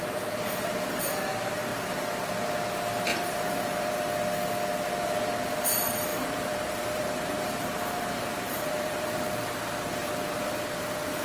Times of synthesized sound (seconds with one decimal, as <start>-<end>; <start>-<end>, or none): 1.7-2.3; 3.1-4.0; 6.1-10.1